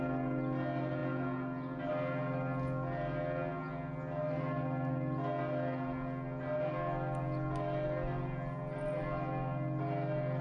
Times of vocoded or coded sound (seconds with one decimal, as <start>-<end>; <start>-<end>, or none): none